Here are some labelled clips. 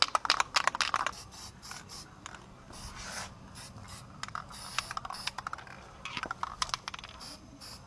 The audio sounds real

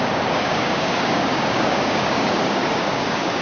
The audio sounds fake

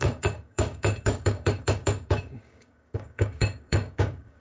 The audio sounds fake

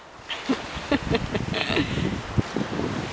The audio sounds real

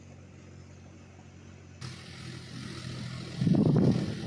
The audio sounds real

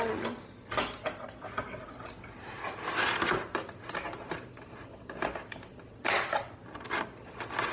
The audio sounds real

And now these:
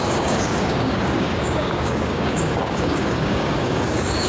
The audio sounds fake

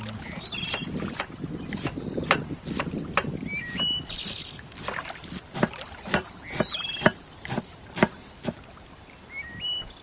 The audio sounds real